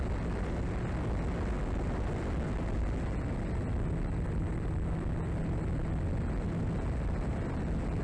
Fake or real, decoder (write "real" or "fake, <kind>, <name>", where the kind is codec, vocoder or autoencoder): real